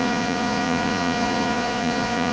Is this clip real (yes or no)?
no